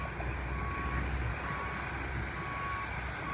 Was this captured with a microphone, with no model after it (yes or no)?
yes